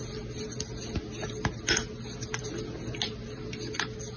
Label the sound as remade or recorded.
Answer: recorded